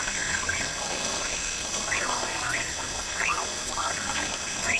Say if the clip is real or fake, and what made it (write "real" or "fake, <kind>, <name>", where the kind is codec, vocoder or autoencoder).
fake, codec, SNAC